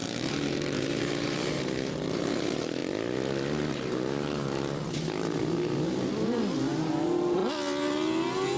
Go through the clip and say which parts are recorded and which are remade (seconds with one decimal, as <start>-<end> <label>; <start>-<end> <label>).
0.0-2.8 remade; 2.8-3.7 recorded; 3.7-5.4 remade; 5.4-6.8 recorded; 6.8-7.4 remade; 7.4-8.6 recorded